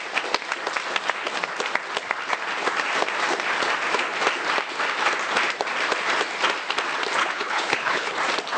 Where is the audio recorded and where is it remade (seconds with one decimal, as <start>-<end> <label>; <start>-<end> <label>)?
0.0-7.2 recorded; 7.2-8.1 remade; 8.1-8.6 recorded